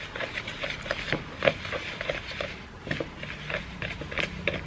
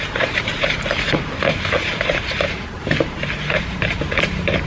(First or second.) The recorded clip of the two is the first